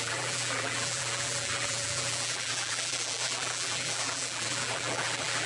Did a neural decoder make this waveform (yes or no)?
yes